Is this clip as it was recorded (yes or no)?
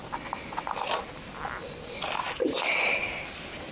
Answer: yes